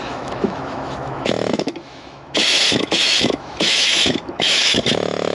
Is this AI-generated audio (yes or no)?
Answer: yes